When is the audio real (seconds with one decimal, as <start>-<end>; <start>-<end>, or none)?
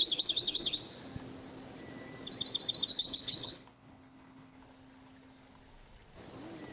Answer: 0.8-2.9; 4.6-6.7